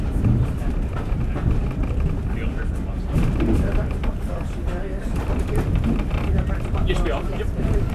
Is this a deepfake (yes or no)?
no